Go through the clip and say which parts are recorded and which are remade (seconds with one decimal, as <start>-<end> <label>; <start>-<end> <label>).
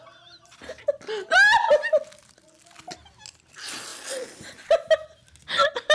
0.0-5.9 recorded